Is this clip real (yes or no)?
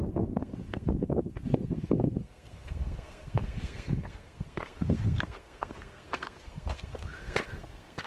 no